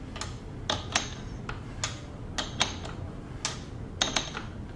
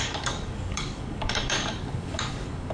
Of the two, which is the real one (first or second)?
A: first